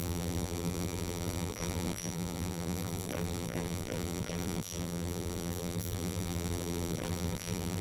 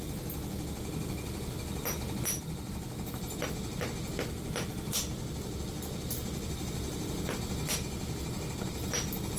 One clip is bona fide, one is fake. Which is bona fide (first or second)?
second